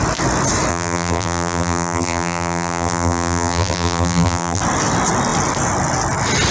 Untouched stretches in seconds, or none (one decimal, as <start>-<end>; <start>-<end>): 0.0-0.7; 4.6-6.5